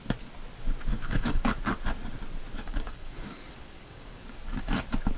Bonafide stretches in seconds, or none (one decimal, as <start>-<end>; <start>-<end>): 0.0-0.9; 1.5-2.6; 4.5-5.2